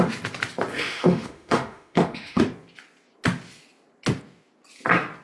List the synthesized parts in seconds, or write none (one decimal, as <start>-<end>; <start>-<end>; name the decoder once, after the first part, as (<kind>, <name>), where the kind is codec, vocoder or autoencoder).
0.7-2.4 (autoencoder, DAC-VAE)